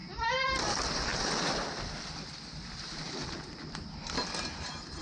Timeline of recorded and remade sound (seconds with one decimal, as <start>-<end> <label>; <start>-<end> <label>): 0.0-5.0 recorded